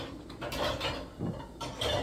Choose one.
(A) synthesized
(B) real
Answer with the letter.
B